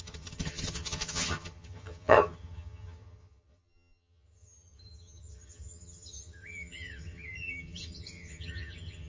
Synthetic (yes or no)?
yes